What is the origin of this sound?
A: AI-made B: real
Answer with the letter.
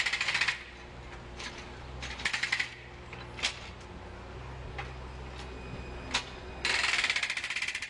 B